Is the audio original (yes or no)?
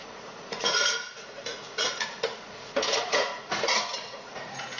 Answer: no